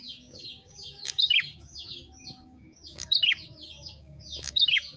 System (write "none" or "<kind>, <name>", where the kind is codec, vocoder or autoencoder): codec, DAC